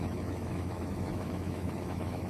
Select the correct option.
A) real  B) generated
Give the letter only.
B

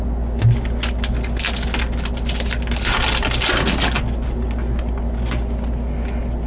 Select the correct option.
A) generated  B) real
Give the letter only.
B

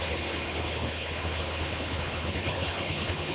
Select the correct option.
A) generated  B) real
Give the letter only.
A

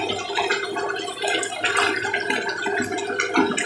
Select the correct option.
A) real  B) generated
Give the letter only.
A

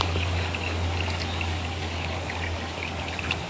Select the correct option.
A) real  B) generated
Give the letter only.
B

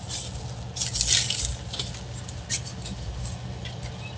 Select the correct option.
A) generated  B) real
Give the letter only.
B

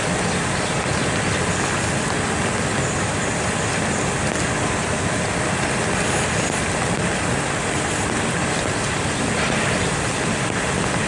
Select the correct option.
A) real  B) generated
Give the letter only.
A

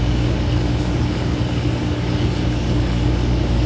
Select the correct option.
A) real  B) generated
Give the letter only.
B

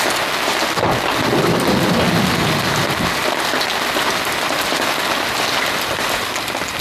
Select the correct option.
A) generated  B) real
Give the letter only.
B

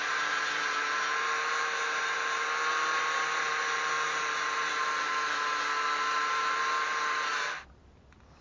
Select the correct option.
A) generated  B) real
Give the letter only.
B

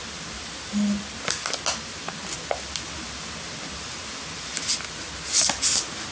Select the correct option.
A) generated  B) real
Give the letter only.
B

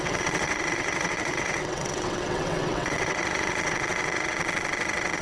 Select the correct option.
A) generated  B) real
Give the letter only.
A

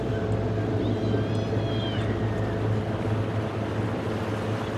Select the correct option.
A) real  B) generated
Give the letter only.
A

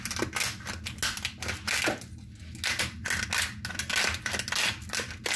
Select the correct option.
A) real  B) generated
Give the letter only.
A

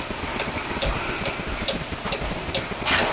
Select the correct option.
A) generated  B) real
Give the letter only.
B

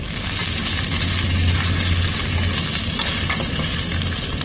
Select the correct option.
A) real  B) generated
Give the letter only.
A